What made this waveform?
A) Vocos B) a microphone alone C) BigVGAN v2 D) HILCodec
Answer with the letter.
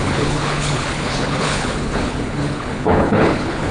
D